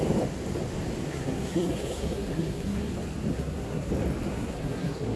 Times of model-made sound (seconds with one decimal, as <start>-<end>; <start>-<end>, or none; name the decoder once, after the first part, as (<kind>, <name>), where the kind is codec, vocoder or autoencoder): 1.1-2.9 (codec, SNAC); 3.3-3.9; 4.3-5.2